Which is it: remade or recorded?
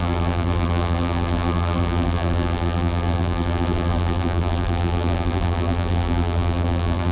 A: remade